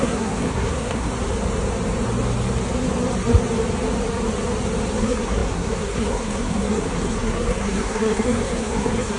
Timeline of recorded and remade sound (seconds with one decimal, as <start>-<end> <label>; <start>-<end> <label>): 0.0-1.1 remade; 1.1-4.9 recorded; 4.9-9.2 remade